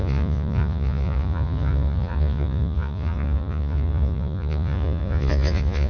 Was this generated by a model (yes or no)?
yes